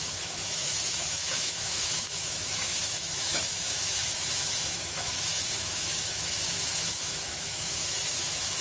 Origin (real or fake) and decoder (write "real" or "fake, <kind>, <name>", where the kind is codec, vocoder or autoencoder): fake, autoencoder, DAC-VAE